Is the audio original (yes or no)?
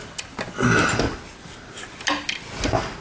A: yes